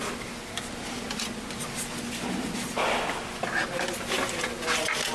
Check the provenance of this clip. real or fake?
real